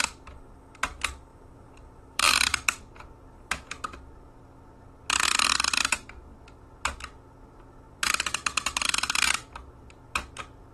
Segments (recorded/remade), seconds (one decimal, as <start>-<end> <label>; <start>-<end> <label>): 0.0-1.3 recorded; 1.3-3.5 remade; 3.5-10.7 recorded

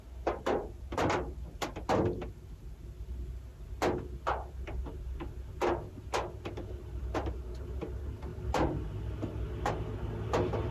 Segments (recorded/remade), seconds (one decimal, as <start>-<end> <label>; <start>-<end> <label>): 0.0-10.7 recorded

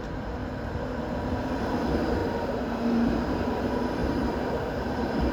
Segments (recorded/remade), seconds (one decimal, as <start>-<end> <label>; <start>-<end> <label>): 0.0-0.4 remade; 0.4-1.4 recorded; 1.4-5.3 remade

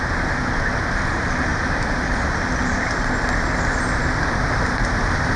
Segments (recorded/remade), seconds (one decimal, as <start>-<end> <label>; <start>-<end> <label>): 0.0-1.5 recorded; 1.5-2.6 remade; 2.6-5.4 recorded

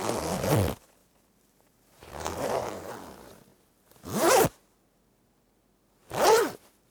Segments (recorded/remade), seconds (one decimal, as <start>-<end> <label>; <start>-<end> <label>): 0.0-1.0 recorded; 1.0-2.9 remade; 2.9-6.9 recorded

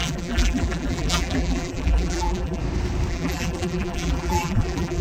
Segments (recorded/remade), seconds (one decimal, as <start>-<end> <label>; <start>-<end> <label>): 0.0-2.6 remade; 2.6-3.1 recorded; 3.1-5.0 remade

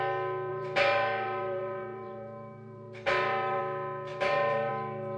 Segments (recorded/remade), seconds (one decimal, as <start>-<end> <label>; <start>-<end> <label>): 0.0-0.5 recorded; 0.5-3.6 remade; 3.6-4.1 recorded; 4.1-4.7 remade; 4.7-5.2 recorded